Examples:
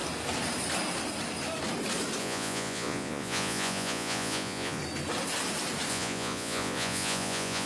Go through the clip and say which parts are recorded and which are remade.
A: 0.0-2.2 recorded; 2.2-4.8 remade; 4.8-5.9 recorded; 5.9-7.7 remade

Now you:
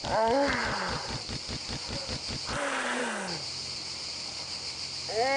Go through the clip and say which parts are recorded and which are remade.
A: 0.0-5.4 recorded

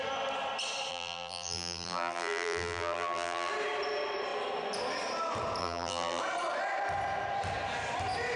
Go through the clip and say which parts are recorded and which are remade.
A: 0.0-0.9 recorded; 0.9-3.5 remade; 3.5-5.6 recorded; 5.6-6.2 remade; 6.2-8.4 recorded